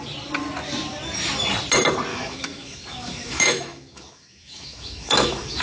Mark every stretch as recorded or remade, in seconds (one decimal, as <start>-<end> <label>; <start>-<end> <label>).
0.0-2.1 recorded; 2.1-5.6 remade